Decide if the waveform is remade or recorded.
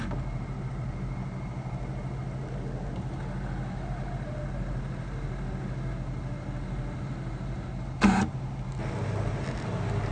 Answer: recorded